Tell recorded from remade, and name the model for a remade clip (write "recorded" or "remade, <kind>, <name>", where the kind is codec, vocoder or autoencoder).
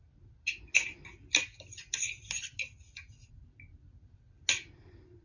recorded